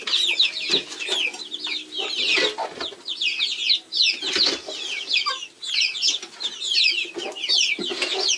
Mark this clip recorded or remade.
recorded